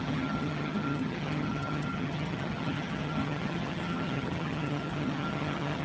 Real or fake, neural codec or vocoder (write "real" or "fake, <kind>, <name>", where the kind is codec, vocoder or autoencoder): fake, vocoder, HiFi-GAN